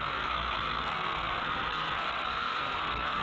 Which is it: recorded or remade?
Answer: remade